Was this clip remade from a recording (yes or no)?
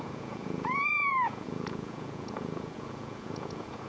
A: yes